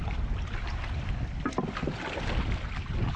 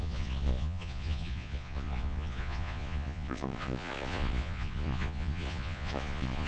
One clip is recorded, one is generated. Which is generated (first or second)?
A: second